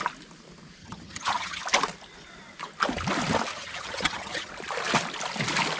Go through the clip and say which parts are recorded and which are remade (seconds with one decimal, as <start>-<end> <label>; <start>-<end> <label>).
0.0-0.8 recorded; 0.8-1.6 remade; 1.6-3.5 recorded; 3.5-4.5 remade; 4.5-5.8 recorded